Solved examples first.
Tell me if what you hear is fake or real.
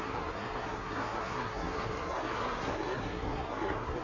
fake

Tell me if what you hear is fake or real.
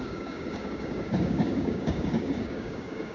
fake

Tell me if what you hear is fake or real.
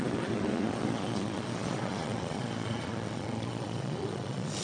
fake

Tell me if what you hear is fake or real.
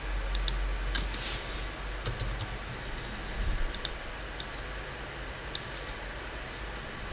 real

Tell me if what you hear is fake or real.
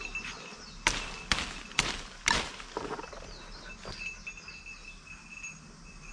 real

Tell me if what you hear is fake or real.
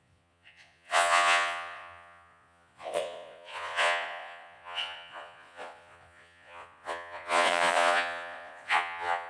fake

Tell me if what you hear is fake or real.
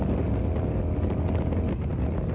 real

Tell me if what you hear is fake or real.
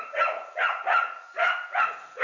fake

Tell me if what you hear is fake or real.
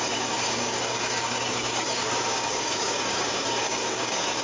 fake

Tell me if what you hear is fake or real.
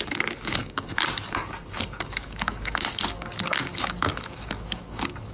fake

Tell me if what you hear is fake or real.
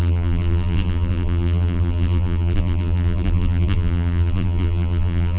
fake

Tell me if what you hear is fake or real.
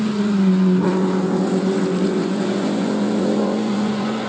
fake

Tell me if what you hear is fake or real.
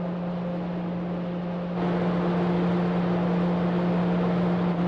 real